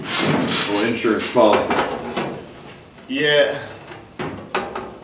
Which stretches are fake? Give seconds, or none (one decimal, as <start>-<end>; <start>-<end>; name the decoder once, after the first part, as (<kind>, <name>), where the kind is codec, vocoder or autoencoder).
none

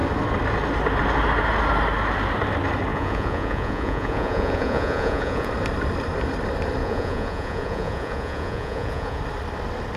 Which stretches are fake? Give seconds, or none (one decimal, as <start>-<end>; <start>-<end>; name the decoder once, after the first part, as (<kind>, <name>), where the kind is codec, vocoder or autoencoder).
2.9-5.5 (vocoder, Vocos); 6.8-9.2

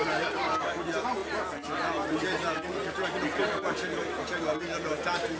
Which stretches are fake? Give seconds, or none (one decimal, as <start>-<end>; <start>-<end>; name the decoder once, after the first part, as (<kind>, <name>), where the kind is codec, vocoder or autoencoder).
none

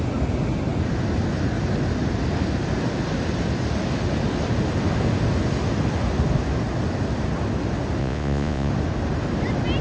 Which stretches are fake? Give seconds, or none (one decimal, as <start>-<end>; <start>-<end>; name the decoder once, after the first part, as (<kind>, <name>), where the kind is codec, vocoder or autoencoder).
8.0-8.7 (vocoder, Vocos)

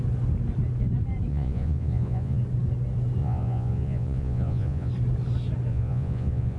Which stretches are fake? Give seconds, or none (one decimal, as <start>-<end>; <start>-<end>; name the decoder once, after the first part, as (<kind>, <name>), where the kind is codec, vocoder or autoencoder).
1.3-2.4 (vocoder, Vocos); 3.2-4.9; 5.7-6.6

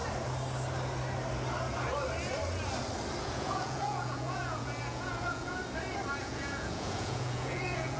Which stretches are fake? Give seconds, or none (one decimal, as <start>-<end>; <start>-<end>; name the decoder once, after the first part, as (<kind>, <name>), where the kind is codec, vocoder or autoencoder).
3.2-5.6 (vocoder, Vocos); 6.2-8.0

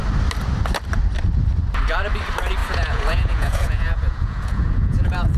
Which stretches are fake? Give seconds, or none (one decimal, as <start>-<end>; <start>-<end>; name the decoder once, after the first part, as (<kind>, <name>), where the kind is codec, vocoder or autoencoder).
2.6-5.4 (vocoder, Vocos)